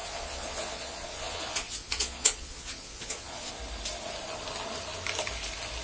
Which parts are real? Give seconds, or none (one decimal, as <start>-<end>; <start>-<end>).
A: 3.5-5.8